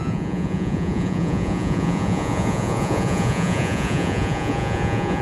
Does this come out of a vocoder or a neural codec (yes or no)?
yes